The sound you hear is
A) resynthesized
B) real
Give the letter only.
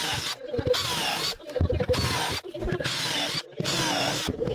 B